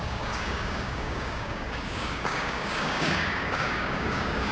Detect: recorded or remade remade